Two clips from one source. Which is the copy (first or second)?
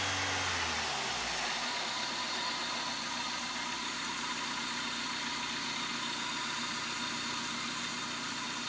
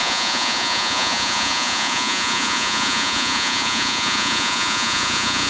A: second